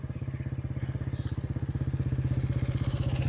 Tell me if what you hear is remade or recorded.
recorded